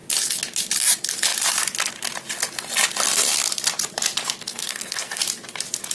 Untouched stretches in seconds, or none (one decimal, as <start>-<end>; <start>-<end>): 0.0-4.5; 5.2-5.9